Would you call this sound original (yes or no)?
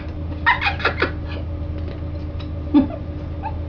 yes